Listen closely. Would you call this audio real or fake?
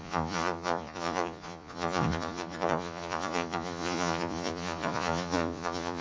fake